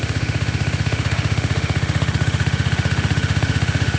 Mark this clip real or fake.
fake